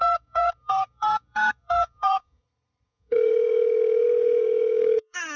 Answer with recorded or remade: remade